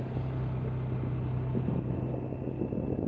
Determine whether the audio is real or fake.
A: real